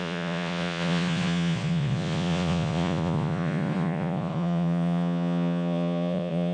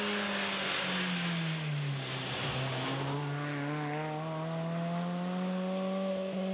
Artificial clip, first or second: first